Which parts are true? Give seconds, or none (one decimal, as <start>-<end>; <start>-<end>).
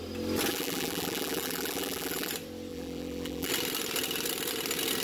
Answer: 0.0-0.5; 2.3-2.7; 3.5-5.0